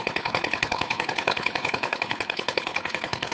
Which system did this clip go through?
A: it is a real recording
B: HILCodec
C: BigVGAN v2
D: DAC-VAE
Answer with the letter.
B